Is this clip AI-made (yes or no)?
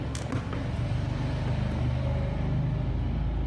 no